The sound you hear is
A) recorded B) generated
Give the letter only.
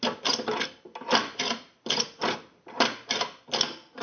A